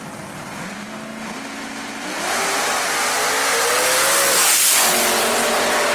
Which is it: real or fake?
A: real